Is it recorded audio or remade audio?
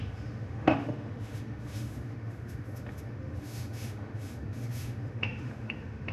remade